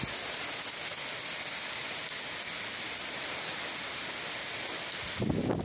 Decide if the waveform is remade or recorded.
recorded